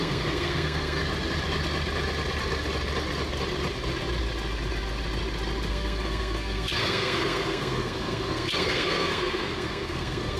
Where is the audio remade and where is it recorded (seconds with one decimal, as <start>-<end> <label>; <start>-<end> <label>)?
0.0-1.0 remade; 1.0-5.7 recorded; 5.7-10.4 remade